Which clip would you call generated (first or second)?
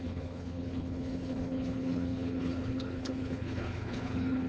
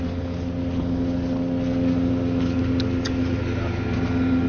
first